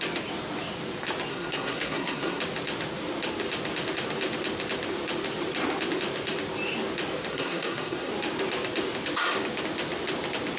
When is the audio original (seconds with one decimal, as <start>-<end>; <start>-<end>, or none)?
0.0-1.3; 2.4-7.3; 8.1-10.6